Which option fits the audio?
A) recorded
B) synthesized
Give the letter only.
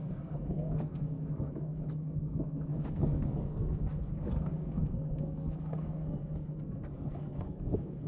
B